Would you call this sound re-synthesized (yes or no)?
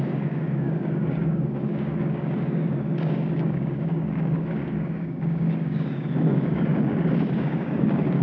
yes